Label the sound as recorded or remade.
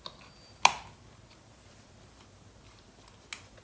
recorded